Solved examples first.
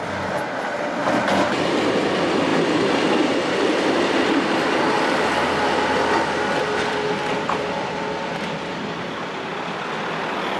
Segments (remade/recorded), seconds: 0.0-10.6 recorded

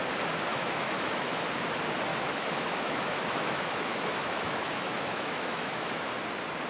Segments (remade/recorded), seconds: 0.0-0.5 recorded; 0.5-1.5 remade; 1.5-2.1 recorded; 2.1-6.1 remade; 6.1-6.7 recorded

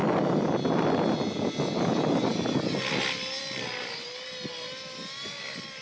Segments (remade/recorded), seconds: 0.0-5.8 recorded

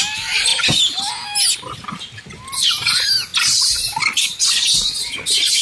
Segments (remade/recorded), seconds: 0.0-0.5 recorded; 0.5-1.1 remade; 1.1-5.6 recorded

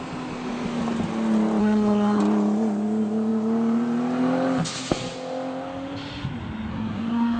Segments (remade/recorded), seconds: 0.0-1.6 recorded; 1.6-2.2 remade; 2.2-6.7 recorded; 6.7-7.4 remade

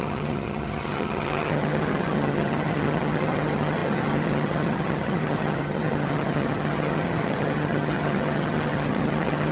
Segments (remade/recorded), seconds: 0.0-9.5 remade